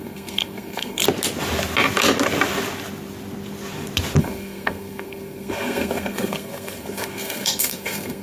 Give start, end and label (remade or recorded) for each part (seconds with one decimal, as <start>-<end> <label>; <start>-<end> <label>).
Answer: 0.0-1.0 remade; 1.0-4.2 recorded; 4.2-8.2 remade